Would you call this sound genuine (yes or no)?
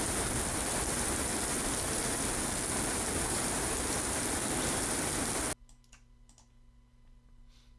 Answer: yes